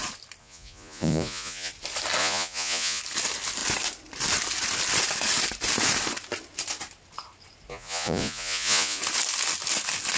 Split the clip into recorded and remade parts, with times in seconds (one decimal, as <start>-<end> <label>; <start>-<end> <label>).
0.0-0.4 recorded; 0.4-1.7 remade; 1.7-2.2 recorded; 2.2-3.0 remade; 3.0-7.7 recorded; 7.7-9.0 remade; 9.0-10.2 recorded